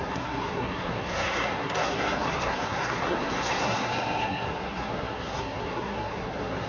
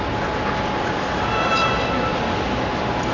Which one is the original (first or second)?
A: second